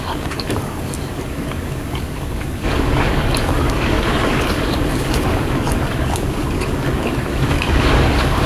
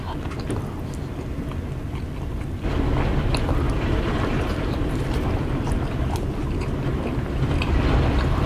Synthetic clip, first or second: first